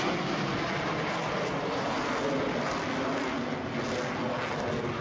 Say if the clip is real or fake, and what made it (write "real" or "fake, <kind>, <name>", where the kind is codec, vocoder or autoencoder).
real